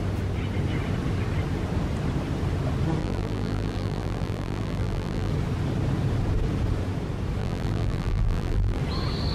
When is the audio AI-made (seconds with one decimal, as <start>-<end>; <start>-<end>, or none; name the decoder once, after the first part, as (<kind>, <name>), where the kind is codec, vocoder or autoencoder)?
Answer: 3.0-5.3 (vocoder, BigVGAN v2); 7.4-8.8

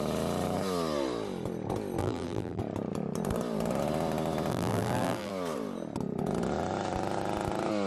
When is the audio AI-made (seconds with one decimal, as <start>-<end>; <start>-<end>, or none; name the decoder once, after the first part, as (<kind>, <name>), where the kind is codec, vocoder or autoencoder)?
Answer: 2.0-2.6 (vocoder, BigVGAN v2); 4.5-5.3